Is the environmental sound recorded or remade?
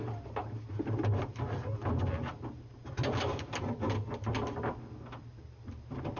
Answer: recorded